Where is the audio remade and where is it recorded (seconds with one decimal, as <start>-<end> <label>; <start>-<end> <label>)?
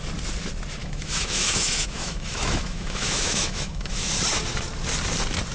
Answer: 0.0-0.8 recorded; 0.8-4.1 remade; 4.1-5.5 recorded